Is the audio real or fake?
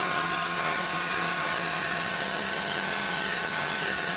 fake